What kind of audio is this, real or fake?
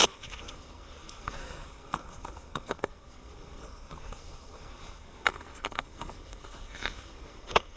fake